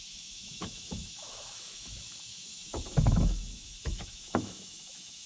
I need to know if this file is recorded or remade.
remade